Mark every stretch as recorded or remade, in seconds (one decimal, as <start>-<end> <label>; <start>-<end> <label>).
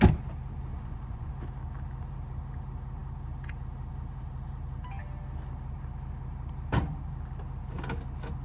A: 0.0-0.7 recorded; 0.7-1.3 remade; 1.3-8.4 recorded